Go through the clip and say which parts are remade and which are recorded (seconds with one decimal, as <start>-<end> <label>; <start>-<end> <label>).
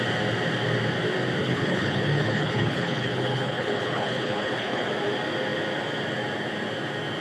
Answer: 0.0-1.4 recorded; 1.4-4.9 remade; 4.9-7.2 recorded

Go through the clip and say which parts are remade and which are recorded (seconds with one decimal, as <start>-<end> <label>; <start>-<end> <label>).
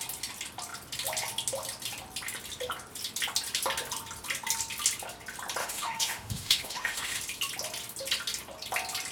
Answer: 0.0-5.6 recorded; 5.6-7.2 remade; 7.2-9.1 recorded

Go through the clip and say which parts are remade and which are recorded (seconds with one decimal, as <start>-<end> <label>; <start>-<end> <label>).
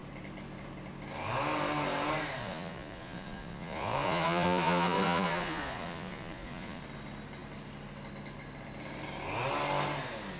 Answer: 0.0-2.4 recorded; 2.4-6.8 remade; 6.8-10.4 recorded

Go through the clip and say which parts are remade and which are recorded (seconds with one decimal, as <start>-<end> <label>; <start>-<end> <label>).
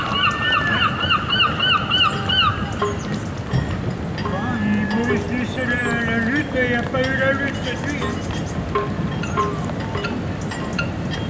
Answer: 0.0-11.3 recorded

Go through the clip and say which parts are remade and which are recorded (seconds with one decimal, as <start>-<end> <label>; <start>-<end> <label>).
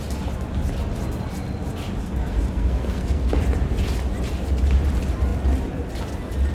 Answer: 0.0-2.0 recorded; 2.0-3.4 remade; 3.4-6.5 recorded